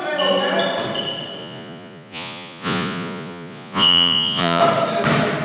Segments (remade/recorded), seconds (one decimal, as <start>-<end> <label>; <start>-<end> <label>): 0.0-1.4 recorded; 1.4-4.6 remade; 4.6-5.4 recorded